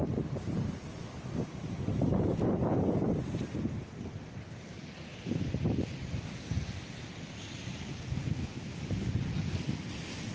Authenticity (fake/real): real